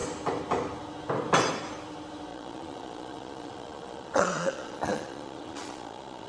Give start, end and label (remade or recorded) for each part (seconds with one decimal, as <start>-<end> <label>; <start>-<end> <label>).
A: 0.0-2.3 recorded; 2.3-6.3 remade